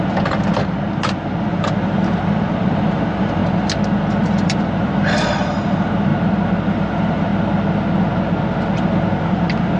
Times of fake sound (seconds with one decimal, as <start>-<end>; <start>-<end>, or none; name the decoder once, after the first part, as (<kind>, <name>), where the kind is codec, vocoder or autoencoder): 0.0-3.4 (vocoder, BigVGAN v2); 4.3-6.1; 6.7-7.3; 9.2-9.8